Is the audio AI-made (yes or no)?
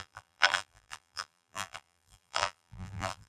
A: yes